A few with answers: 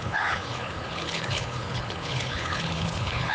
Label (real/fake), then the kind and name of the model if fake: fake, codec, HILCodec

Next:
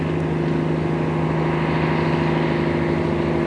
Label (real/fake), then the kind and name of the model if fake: real